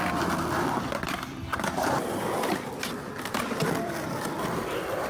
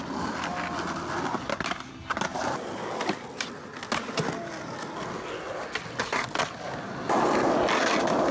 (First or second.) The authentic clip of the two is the second